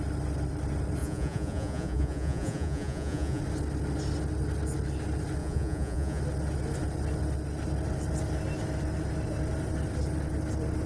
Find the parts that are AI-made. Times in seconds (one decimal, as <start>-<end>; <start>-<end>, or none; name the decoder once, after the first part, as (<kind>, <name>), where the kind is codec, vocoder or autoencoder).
1.0-3.4 (vocoder, Vocos); 5.4-6.2